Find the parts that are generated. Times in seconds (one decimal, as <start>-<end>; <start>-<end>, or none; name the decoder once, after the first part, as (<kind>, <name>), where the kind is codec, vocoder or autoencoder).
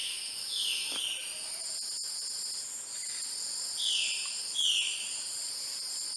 0.0-1.6 (autoencoder, DAC-VAE)